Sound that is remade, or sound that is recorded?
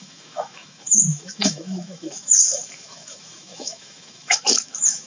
remade